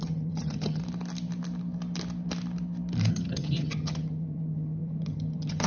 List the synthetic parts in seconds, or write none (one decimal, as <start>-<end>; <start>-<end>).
0.0-0.8; 3.1-5.7